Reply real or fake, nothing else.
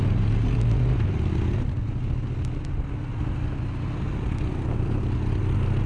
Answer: real